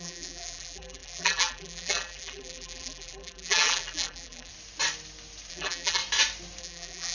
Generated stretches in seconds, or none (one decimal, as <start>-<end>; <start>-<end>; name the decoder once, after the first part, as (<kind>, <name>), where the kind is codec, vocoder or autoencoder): 0.0-4.5 (vocoder, BigVGAN v2); 5.5-6.0; 6.6-7.1